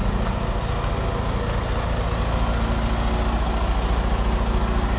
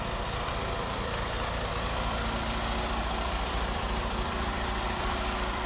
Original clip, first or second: first